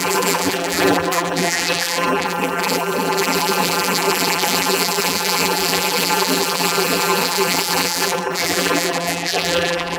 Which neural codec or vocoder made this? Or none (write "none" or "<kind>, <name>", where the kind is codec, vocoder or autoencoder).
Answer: vocoder, BigVGAN v2